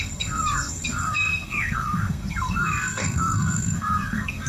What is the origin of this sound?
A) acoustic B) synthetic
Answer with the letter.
B